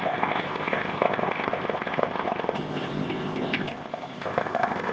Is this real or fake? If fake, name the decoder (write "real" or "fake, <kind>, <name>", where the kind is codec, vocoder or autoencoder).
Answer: fake, codec, ZipCodec